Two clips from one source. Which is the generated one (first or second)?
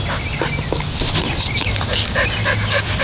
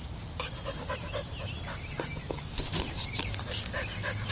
second